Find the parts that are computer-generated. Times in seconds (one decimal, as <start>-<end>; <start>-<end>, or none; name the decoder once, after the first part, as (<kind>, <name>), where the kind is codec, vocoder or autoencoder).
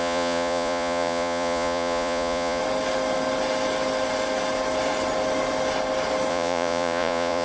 0.0-2.6 (vocoder, Vocos); 6.3-7.4